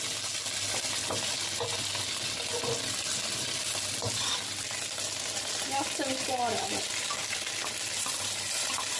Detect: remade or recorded recorded